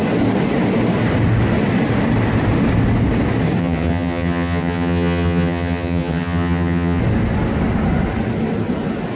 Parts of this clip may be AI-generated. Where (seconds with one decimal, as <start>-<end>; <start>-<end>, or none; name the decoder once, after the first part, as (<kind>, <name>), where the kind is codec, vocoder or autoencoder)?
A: 3.6-7.0 (vocoder, HiFi-GAN)